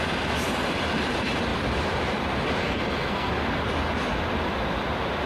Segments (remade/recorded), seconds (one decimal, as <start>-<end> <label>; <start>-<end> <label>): 0.0-2.6 recorded; 2.6-3.3 remade; 3.3-5.3 recorded